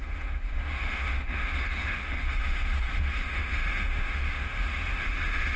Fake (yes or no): yes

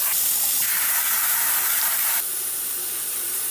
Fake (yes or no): yes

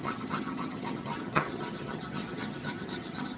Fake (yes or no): yes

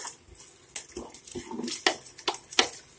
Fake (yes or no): no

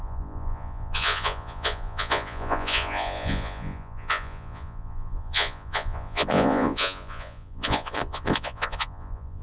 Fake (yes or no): yes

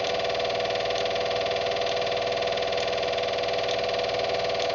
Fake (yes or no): no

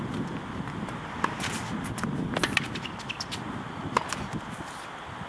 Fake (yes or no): no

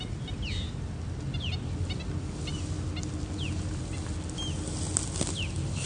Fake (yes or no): no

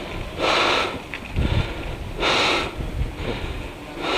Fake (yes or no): no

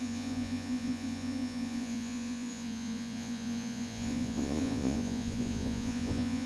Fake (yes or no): yes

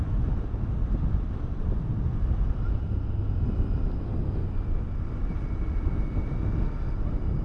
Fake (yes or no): no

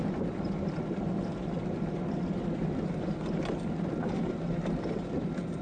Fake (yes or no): no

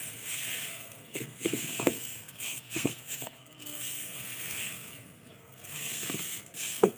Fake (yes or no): yes